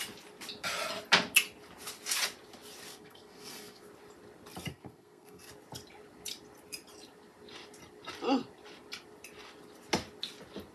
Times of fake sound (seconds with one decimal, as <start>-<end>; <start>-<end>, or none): 2.9-3.9; 4.7-5.5